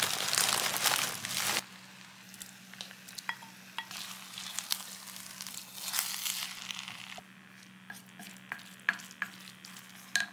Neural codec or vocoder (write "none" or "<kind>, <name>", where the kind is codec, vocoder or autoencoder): none